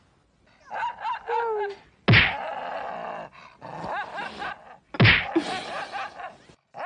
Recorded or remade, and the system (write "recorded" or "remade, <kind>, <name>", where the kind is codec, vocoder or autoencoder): recorded